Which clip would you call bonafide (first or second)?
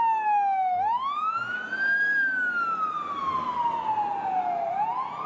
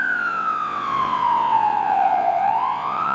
first